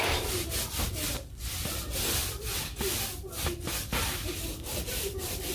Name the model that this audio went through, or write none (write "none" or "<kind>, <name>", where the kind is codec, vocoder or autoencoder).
vocoder, BigVGAN v2